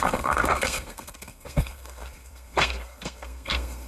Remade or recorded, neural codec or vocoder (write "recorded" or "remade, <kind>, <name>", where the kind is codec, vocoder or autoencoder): remade, codec, SNAC